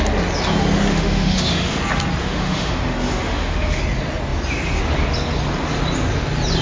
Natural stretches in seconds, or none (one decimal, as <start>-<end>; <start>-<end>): 0.0-0.9; 1.8-2.2; 3.8-6.6